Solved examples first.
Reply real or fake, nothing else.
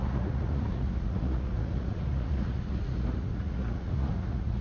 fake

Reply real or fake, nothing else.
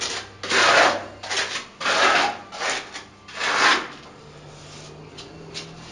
real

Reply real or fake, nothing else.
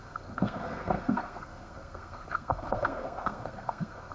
fake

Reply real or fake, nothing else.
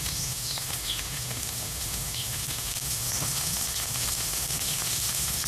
fake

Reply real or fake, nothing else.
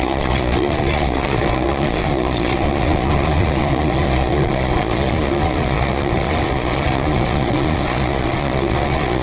fake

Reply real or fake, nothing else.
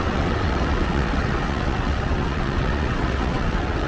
fake